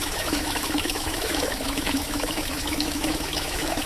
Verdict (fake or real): fake